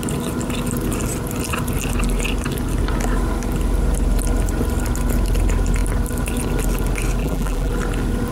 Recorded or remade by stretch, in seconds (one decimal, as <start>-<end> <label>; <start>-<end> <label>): 0.0-7.2 recorded; 7.2-7.7 remade; 7.7-8.3 recorded